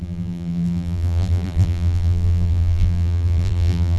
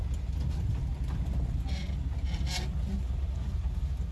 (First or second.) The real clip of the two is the second